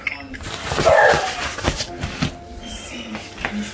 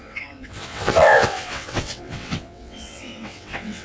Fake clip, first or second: second